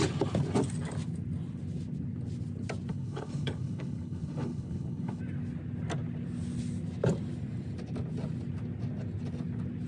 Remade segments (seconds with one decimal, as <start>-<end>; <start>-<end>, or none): 2.9-5.2